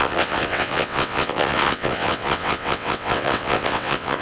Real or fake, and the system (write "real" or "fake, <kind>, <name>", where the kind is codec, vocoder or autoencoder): fake, vocoder, WaveNeXt